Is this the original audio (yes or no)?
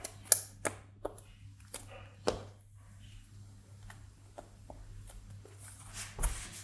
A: yes